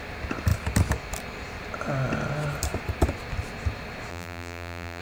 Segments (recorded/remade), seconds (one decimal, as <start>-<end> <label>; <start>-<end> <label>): 0.0-4.1 recorded; 4.1-5.0 remade